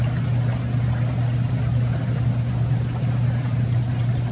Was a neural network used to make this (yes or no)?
no